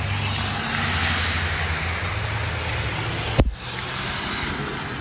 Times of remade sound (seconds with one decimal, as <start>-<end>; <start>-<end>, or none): none

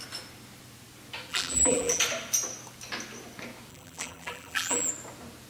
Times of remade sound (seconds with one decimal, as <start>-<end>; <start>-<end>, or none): 1.3-2.0; 3.7-4.9

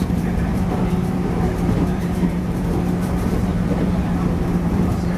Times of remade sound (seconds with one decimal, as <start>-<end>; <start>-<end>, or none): 0.0-5.2

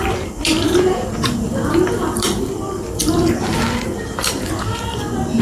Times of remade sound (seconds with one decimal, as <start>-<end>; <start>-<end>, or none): 0.0-5.4

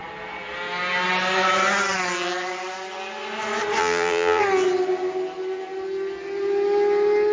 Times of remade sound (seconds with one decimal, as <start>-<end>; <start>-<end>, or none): 3.8-4.4